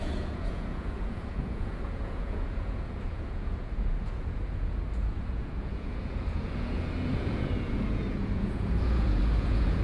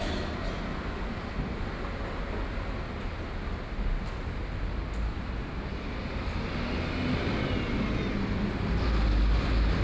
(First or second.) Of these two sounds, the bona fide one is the second